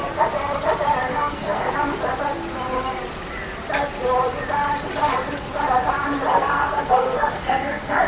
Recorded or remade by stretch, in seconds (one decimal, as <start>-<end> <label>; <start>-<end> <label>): 0.0-1.1 recorded; 1.1-1.7 remade; 1.7-6.3 recorded; 6.3-8.1 remade